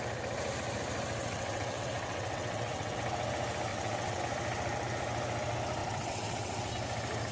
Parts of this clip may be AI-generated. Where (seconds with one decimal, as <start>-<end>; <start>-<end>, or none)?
1.2-3.0; 3.7-4.2; 5.8-6.7